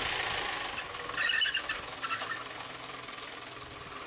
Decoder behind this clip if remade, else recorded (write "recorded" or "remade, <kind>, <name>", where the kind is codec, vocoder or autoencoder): recorded